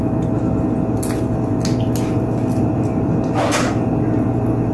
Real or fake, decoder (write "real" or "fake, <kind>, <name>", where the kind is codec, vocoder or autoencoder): real